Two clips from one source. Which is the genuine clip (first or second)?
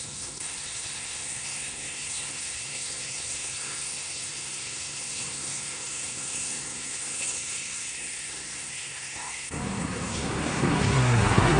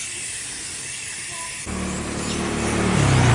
second